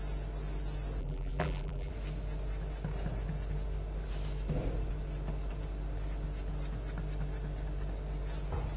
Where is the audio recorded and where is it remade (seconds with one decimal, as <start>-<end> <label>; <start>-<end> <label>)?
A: 0.0-1.0 recorded; 1.0-1.9 remade; 1.9-8.8 recorded